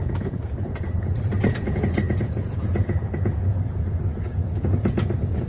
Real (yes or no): no